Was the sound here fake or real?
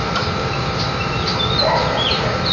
fake